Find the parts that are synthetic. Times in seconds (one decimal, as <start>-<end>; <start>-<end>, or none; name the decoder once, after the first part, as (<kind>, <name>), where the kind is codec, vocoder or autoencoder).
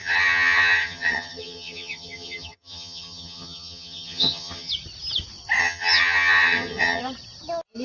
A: 0.0-4.7 (vocoder, HiFi-GAN); 5.6-7.0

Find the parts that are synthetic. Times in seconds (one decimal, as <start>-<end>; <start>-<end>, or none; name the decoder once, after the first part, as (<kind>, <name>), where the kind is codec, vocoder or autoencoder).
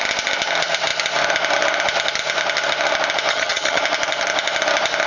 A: 3.3-3.8 (vocoder, HiFi-GAN)